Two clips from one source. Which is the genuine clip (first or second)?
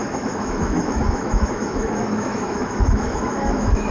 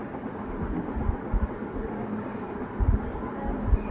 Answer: second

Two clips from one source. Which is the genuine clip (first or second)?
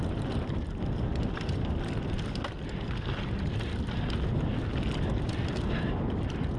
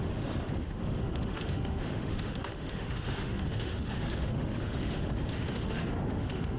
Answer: first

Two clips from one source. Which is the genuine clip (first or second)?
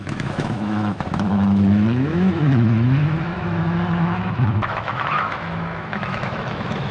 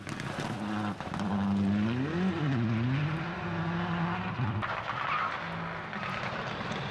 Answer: second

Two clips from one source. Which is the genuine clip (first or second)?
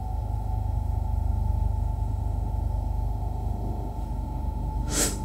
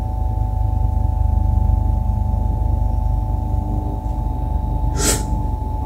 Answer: second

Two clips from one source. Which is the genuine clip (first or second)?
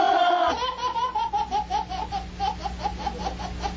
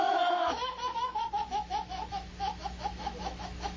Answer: first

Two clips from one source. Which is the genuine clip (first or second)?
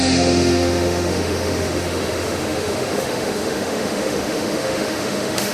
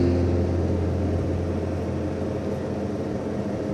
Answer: second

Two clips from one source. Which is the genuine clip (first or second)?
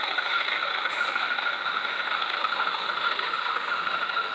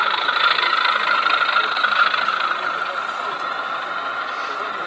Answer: second